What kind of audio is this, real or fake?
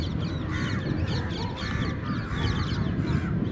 real